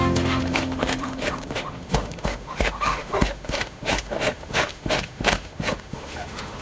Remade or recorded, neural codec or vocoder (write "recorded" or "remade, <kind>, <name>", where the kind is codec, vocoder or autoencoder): remade, autoencoder, DAC-VAE